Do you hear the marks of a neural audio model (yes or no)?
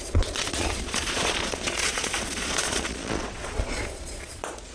yes